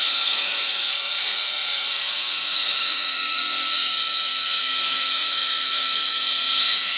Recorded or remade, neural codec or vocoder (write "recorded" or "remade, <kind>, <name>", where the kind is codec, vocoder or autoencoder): remade, codec, SNAC